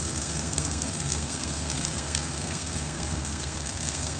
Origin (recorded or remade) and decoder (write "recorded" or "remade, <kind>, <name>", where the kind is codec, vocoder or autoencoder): remade, codec, SNAC